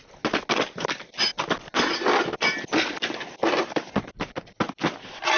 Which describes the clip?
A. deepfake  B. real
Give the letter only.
B